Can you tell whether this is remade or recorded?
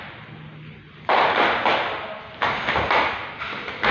recorded